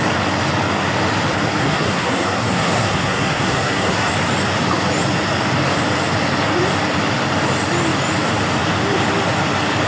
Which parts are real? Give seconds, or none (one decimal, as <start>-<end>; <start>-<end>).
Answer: 0.0-1.6; 4.1-9.9